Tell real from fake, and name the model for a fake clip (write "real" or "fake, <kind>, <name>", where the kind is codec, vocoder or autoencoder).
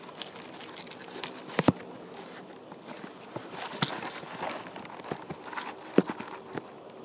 real